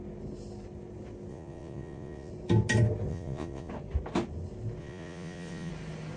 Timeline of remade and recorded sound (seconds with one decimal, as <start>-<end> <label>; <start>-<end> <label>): 0.0-1.3 recorded; 1.3-2.3 remade; 2.3-3.1 recorded; 3.1-3.7 remade; 3.7-4.8 recorded; 4.8-5.7 remade; 5.7-6.2 recorded